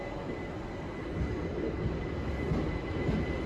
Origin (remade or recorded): recorded